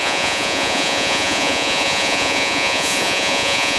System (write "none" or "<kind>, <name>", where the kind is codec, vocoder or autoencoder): vocoder, Vocos